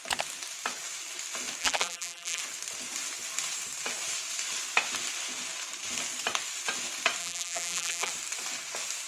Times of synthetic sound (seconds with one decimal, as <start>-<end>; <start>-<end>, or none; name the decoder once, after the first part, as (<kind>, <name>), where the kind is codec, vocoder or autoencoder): 1.6-2.4 (vocoder, BigVGAN v2); 7.2-8.1